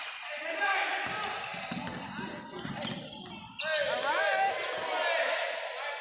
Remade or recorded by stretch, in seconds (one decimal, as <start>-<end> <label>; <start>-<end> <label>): 0.0-6.0 recorded